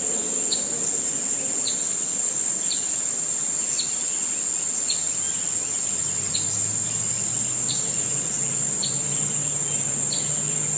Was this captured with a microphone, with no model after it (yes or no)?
yes